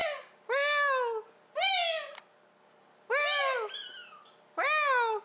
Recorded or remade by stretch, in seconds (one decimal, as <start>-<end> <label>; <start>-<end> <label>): 0.0-5.2 recorded